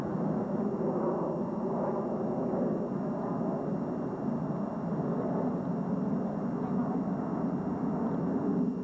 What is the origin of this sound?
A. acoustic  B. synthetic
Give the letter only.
A